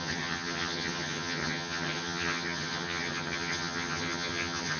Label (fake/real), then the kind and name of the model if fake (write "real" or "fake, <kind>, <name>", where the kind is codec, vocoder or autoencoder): fake, vocoder, HiFi-GAN